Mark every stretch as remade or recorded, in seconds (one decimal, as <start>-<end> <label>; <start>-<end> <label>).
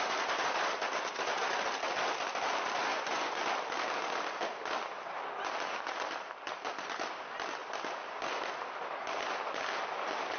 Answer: 0.0-2.9 recorded; 2.9-3.4 remade; 3.4-10.4 recorded